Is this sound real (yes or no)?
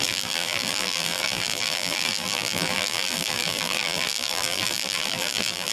no